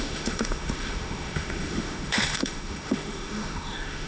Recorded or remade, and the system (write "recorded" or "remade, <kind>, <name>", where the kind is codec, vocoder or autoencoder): remade, autoencoder, DAC-VAE